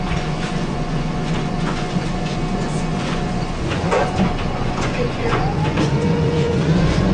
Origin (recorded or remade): remade